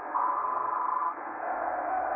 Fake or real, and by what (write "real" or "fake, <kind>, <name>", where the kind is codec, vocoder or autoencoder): fake, codec, SNAC